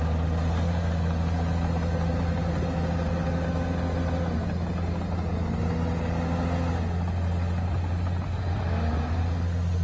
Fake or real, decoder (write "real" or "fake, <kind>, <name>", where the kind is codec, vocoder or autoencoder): real